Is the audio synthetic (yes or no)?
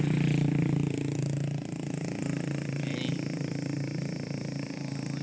no